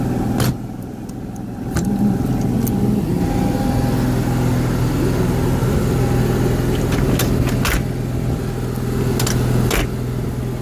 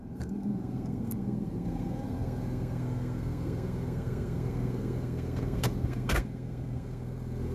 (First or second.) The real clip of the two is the first